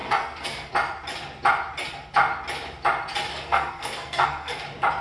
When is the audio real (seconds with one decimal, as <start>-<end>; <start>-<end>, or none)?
0.7-3.3; 4.6-5.0